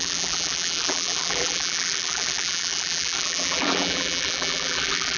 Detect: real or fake fake